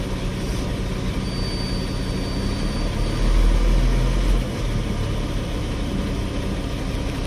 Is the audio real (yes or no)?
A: yes